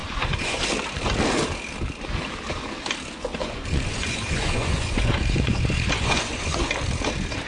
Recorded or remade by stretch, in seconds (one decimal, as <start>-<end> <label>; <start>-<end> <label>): 0.0-0.6 remade; 0.6-3.4 recorded; 3.4-6.7 remade; 6.7-7.5 recorded